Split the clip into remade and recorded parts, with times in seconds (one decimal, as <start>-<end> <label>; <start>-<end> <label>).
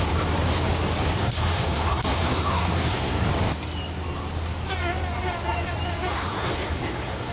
0.0-1.2 recorded; 1.2-3.3 remade; 3.3-6.1 recorded; 6.1-7.3 remade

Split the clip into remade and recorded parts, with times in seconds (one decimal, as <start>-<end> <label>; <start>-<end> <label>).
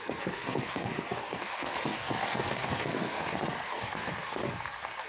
0.0-5.1 remade